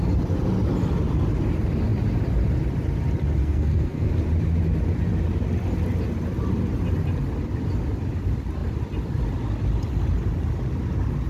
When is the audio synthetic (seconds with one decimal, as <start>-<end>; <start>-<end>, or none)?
3.4-4.1